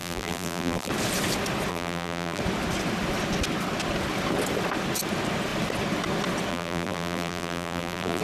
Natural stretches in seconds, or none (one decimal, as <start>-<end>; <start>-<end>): 0.9-1.7; 2.4-6.5